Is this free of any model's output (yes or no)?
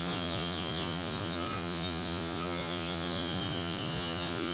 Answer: no